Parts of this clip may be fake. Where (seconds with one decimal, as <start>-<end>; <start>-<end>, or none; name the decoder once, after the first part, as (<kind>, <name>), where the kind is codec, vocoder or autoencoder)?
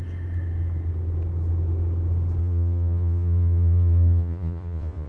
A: 2.4-5.1 (vocoder, Vocos)